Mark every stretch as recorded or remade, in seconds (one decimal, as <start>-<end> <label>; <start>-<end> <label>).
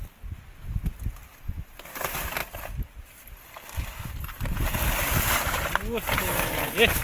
0.0-7.0 recorded